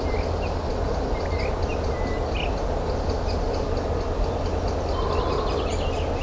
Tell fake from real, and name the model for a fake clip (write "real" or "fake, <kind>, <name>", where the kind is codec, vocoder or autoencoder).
real